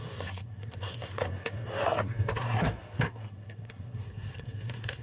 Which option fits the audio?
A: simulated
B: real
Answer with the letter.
A